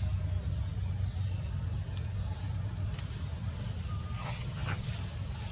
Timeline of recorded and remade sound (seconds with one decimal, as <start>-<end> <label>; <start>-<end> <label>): 0.0-4.2 recorded; 4.2-4.9 remade; 4.9-5.5 recorded